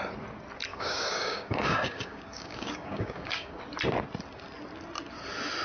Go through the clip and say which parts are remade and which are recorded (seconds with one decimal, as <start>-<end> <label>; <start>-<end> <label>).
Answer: 0.0-0.7 recorded; 0.7-3.6 remade; 3.6-5.6 recorded